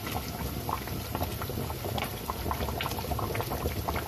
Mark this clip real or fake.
fake